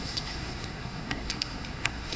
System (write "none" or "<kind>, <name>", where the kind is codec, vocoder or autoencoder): codec, SNAC